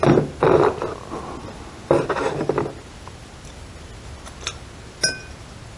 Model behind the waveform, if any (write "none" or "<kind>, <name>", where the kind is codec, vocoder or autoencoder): none